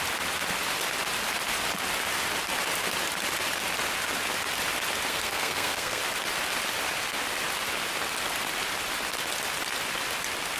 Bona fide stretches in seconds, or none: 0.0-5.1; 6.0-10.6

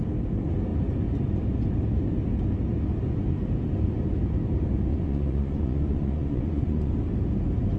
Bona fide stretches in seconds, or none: 0.0-4.9; 6.9-7.8

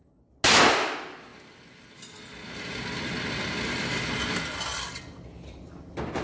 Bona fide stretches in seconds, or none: 0.0-6.2

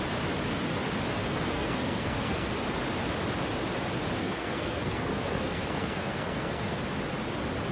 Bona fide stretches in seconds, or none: 0.0-1.1; 2.5-4.2; 6.8-7.7

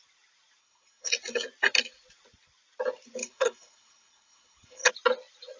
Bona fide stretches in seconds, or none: 0.0-0.6; 1.1-3.2; 4.9-5.6

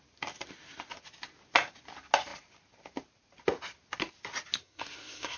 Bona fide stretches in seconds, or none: 0.0-4.6

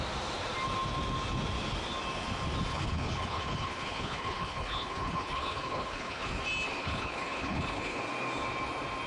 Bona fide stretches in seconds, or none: 0.0-2.7; 6.3-6.8; 8.0-9.1

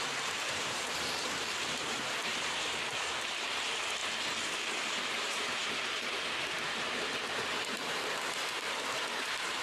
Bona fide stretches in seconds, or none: 4.0-4.7